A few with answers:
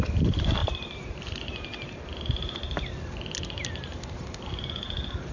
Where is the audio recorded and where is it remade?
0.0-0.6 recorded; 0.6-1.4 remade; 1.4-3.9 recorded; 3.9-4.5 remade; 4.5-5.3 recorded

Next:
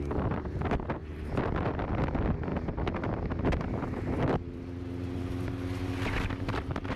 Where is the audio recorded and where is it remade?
0.0-2.5 recorded; 2.5-4.6 remade; 4.6-7.0 recorded

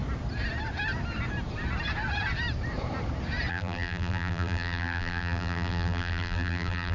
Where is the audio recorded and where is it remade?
0.0-3.5 recorded; 3.5-6.9 remade